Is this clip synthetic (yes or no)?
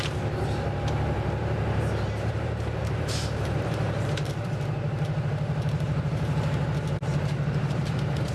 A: yes